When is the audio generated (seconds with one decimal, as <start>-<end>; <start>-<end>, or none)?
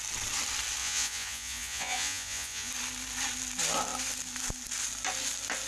0.8-2.7